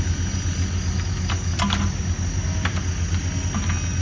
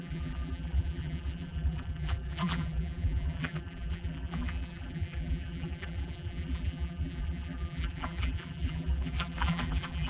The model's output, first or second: second